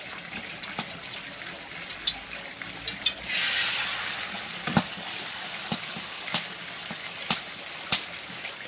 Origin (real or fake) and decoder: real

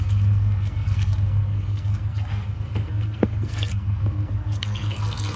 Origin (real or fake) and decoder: fake, codec, SNAC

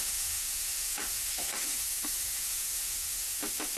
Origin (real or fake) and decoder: fake, autoencoder, DAC-VAE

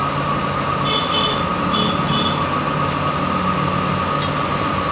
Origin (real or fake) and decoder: real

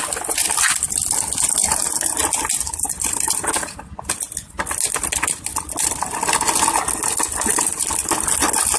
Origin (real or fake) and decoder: real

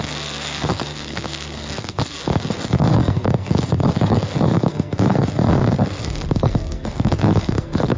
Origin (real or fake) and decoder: fake, codec, SNAC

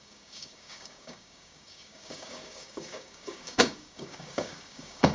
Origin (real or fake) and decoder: fake, codec, DAC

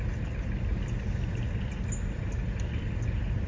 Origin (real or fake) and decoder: real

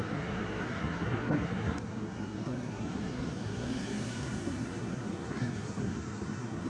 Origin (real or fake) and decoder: fake, codec, SNAC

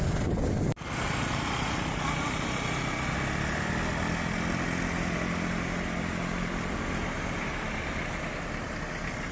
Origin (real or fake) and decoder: real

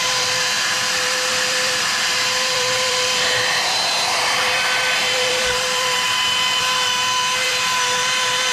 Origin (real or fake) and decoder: fake, vocoder, BigVGAN v2